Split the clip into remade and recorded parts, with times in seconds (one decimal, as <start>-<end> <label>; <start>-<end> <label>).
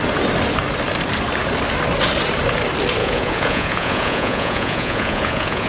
0.0-3.0 recorded; 3.0-5.7 remade